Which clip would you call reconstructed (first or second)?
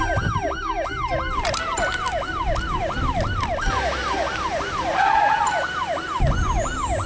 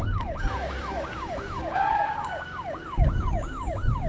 second